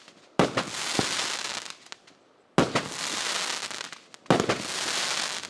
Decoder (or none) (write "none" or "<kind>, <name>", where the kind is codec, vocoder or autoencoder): none